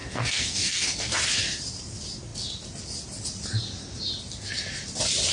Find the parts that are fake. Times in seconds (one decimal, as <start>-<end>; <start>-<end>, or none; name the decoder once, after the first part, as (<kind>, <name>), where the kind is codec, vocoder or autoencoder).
0.0-1.1 (codec, SNAC)